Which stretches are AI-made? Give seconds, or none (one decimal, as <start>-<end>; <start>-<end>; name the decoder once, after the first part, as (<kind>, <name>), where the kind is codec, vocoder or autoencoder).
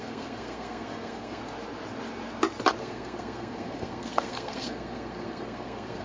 0.0-1.4 (codec, SNAC); 2.8-6.0